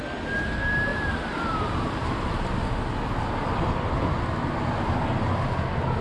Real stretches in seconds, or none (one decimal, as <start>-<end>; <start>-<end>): 0.0-0.9; 4.1-6.0